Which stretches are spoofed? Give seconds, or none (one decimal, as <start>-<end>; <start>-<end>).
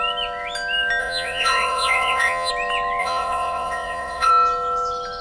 1.0-2.5; 3.0-4.3